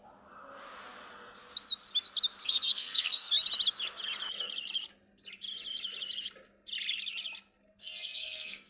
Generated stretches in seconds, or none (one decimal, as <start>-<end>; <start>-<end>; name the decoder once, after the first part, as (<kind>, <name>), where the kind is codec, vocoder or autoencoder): 2.4-3.3 (codec, SNAC); 7.8-8.7

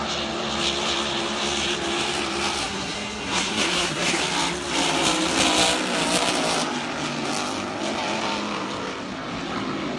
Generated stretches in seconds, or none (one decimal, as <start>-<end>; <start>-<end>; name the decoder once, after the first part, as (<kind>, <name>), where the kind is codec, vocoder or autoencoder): 2.6-4.2 (codec, SNAC)

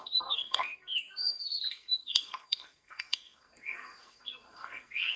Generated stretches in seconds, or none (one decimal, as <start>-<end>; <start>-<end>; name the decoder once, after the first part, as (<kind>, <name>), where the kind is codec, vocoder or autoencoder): 0.0-5.2 (codec, SNAC)

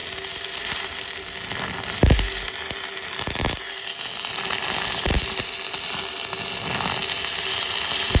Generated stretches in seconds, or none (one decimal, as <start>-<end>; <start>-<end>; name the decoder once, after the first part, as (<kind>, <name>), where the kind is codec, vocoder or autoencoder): none

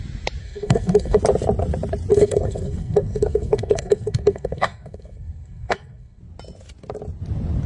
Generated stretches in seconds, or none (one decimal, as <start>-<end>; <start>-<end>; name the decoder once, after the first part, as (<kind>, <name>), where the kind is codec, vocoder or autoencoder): 0.4-1.2 (codec, SNAC); 2.1-6.2